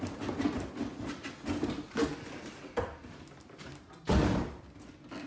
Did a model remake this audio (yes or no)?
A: no